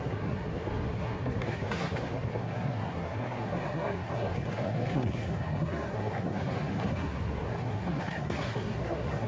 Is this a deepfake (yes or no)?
yes